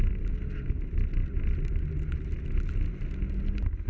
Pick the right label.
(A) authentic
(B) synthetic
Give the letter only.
A